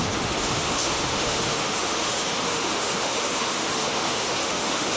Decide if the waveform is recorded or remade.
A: remade